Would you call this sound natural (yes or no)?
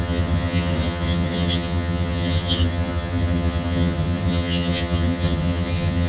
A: no